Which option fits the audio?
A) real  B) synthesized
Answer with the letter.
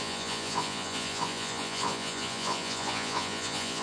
B